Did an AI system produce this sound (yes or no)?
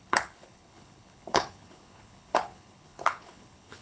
yes